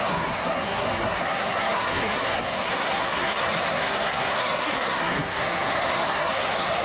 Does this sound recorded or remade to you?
remade